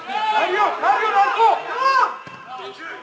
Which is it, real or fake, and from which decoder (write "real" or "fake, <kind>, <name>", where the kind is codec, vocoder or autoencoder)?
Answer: real